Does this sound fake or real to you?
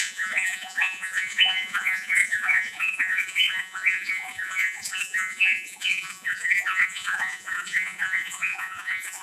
fake